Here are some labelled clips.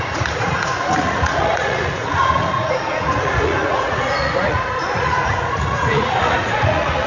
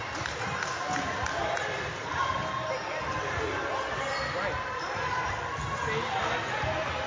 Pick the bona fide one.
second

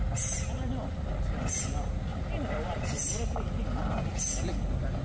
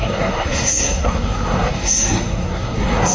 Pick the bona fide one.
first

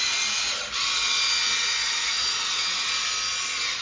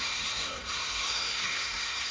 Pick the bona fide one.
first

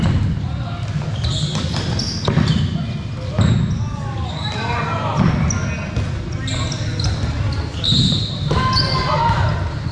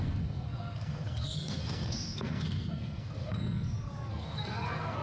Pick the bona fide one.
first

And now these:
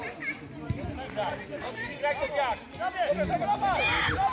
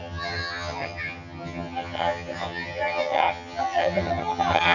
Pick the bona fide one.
first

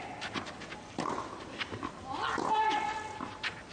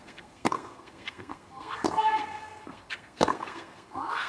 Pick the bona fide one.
first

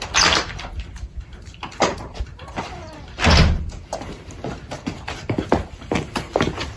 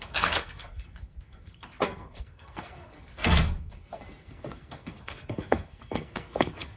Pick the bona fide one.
first